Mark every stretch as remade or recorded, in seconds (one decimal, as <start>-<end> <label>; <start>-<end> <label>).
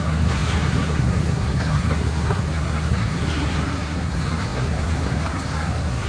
0.0-6.1 remade